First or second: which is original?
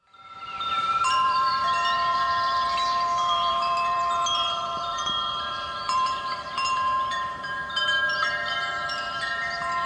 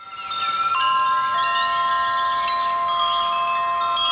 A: second